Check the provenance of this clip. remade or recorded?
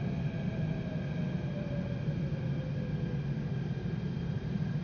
recorded